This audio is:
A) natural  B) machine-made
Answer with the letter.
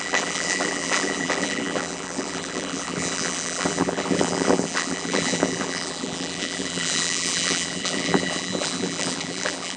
B